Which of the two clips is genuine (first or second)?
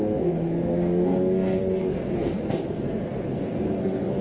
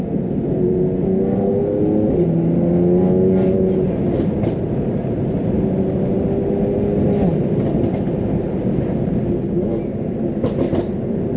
second